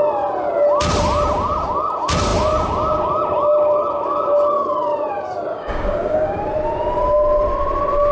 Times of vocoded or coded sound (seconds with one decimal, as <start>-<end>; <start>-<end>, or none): 5.5-6.5